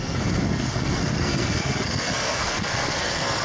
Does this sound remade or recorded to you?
remade